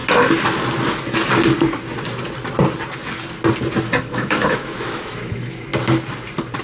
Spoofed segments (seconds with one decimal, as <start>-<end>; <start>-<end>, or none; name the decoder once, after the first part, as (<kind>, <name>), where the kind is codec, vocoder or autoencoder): 4.0-5.7 (autoencoder, DAC-VAE)